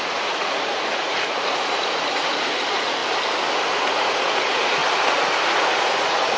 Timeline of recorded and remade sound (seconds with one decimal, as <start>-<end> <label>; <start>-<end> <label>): 0.0-3.0 remade; 3.0-3.6 recorded; 3.6-4.8 remade; 4.8-5.4 recorded; 5.4-6.4 remade